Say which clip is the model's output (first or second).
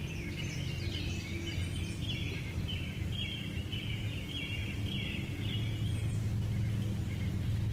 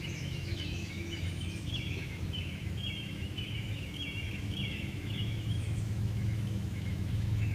second